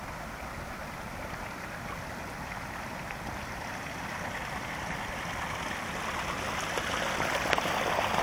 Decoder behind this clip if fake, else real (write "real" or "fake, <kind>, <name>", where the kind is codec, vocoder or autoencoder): real